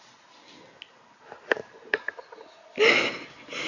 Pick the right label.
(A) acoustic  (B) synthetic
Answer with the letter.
A